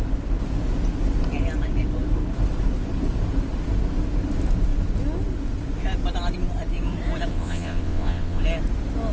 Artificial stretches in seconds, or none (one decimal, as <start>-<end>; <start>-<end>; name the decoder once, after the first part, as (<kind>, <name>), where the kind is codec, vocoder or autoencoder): 7.3-8.4 (vocoder, WaveNeXt)

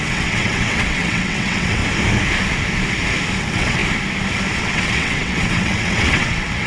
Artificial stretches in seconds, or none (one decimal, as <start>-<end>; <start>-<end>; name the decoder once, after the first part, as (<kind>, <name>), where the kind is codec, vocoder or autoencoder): 0.0-1.8 (vocoder, WaveNeXt); 3.4-3.8; 4.6-6.7

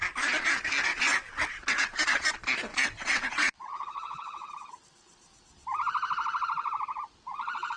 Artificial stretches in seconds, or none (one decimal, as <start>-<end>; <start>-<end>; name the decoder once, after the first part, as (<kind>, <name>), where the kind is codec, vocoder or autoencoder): 0.9-2.3 (vocoder, WaveNeXt); 2.7-4.5

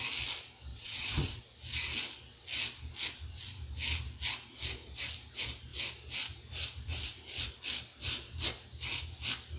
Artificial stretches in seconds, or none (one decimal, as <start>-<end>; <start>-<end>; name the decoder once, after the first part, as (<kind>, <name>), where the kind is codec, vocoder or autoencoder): 0.7-1.4 (vocoder, WaveNeXt)

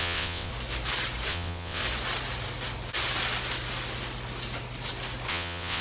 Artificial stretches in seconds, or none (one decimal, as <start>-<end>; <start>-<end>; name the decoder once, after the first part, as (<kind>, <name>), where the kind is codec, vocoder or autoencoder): 0.0-0.5 (vocoder, WaveNeXt); 1.3-1.8; 5.3-5.8

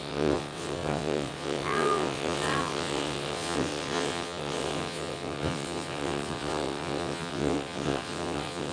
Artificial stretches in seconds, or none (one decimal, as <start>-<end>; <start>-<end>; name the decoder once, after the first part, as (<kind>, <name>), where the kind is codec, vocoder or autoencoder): 0.0-8.7 (vocoder, WaveNeXt)